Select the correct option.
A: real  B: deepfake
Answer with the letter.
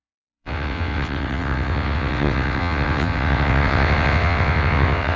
B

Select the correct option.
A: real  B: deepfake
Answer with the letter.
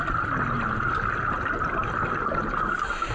A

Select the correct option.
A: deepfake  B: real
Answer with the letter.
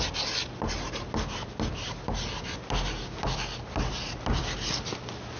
B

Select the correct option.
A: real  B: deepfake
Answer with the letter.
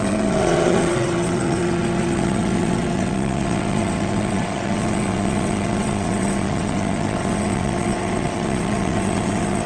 B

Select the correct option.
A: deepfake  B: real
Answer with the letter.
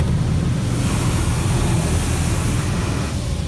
B